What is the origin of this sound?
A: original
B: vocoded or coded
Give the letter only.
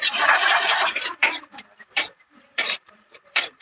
B